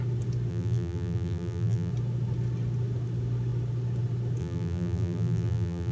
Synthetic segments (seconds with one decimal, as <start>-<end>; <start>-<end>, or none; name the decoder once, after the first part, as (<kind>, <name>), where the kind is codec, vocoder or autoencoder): 0.5-1.9 (vocoder, BigVGAN v2); 4.4-5.9

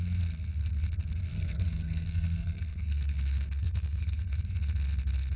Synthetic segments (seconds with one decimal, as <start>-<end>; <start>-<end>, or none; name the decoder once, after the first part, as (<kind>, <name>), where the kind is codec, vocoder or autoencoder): 1.3-4.4 (codec, SNAC)

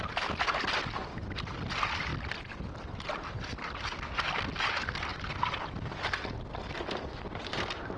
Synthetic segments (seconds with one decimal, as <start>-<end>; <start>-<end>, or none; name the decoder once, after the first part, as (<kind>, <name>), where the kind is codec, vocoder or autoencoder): none

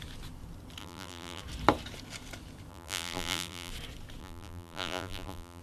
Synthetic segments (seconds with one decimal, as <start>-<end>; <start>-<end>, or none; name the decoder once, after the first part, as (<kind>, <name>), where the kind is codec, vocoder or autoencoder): 0.8-1.4 (vocoder, BigVGAN v2); 2.7-3.7; 4.2-5.6

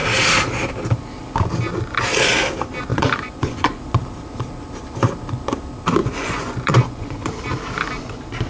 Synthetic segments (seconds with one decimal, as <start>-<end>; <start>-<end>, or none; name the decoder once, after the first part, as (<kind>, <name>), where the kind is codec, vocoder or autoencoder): 2.9-3.8 (vocoder, Vocos); 6.0-7.3

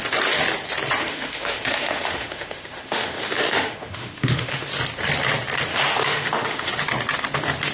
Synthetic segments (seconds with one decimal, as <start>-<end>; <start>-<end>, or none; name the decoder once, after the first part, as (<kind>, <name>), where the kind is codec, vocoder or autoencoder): 1.0-4.7 (autoencoder, DAC-VAE); 5.7-6.7

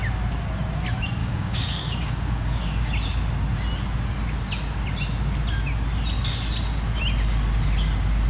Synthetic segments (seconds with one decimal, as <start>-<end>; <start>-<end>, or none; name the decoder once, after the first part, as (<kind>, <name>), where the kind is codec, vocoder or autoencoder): 1.2-2.9 (codec, DAC)

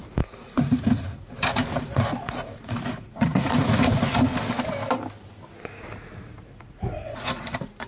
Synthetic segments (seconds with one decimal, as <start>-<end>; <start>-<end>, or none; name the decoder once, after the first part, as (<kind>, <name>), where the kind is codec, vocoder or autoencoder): 0.0-4.3 (vocoder, Vocos); 5.8-7.9